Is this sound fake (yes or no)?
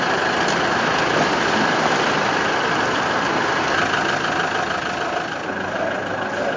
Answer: no